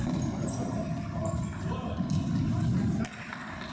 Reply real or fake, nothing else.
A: real